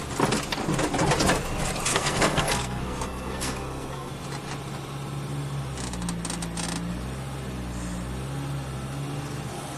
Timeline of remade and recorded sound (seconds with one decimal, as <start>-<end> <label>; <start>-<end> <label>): 0.0-1.9 recorded; 1.9-4.1 remade; 4.1-9.8 recorded